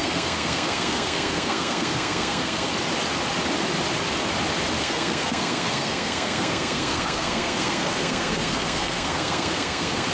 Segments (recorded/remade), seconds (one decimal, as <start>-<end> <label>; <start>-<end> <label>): 0.0-2.7 remade; 2.7-4.8 recorded; 4.8-10.1 remade